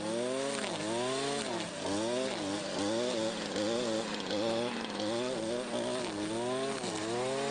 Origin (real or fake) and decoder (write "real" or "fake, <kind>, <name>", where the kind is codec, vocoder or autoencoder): real